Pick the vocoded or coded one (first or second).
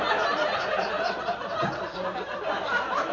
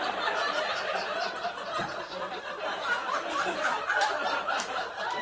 second